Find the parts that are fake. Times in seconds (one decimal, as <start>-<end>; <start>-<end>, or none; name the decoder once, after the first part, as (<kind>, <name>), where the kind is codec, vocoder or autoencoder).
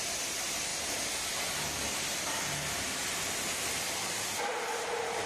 0.0-0.7 (vocoder, BigVGAN v2); 3.9-5.3